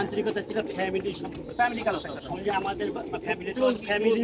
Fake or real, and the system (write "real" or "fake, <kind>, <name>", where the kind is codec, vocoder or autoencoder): real